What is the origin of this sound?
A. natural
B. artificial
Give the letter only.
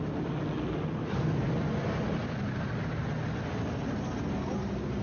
A